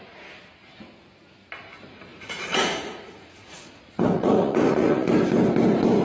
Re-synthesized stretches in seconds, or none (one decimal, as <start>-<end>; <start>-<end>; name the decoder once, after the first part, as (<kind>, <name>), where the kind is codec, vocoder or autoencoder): 2.1-5.1 (vocoder, Vocos)